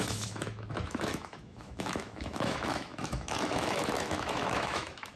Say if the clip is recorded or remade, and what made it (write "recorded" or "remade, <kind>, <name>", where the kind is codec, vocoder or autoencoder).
remade, autoencoder, DAC-VAE